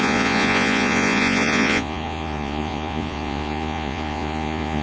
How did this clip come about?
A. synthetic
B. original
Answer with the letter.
A